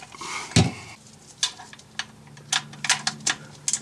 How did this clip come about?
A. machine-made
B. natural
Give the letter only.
B